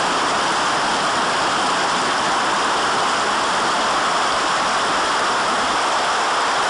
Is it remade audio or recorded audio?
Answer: recorded